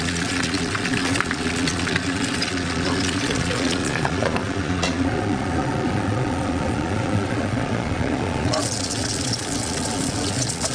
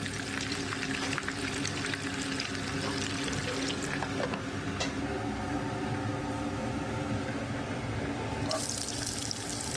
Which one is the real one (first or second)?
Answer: second